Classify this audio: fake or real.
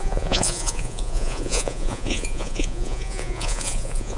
fake